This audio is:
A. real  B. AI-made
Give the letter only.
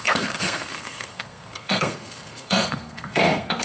B